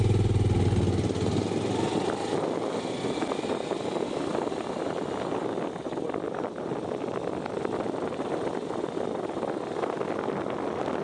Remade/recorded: recorded